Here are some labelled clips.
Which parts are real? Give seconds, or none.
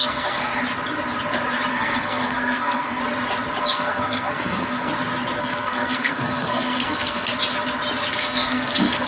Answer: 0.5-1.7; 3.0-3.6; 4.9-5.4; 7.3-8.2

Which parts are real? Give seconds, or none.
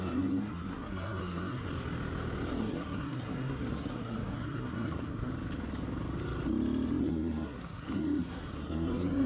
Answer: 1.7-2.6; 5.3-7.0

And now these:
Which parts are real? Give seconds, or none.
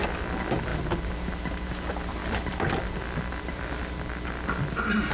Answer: 0.0-5.1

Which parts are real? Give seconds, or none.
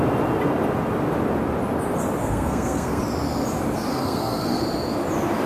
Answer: 0.0-2.2; 3.0-3.9; 4.6-5.5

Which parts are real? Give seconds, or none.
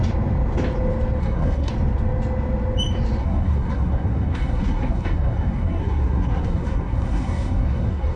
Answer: 0.0-1.2; 1.7-3.2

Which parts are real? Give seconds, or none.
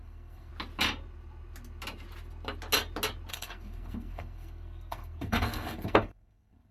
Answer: 0.5-3.3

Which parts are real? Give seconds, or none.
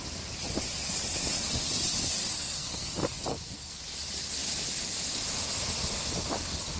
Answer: 0.0-2.2; 2.9-3.3; 3.8-6.8